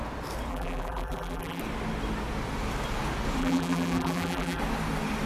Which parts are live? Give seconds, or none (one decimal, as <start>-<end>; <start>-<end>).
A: 0.0-0.5; 1.6-3.4; 4.6-5.3